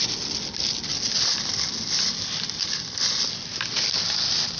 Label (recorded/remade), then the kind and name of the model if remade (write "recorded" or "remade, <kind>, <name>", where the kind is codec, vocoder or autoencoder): recorded